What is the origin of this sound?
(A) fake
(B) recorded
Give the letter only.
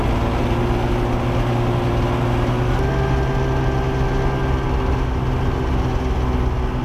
B